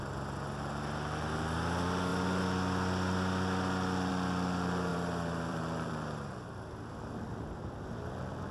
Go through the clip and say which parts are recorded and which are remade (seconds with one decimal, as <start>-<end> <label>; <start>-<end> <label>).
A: 0.0-4.9 recorded; 4.9-7.1 remade; 7.1-8.5 recorded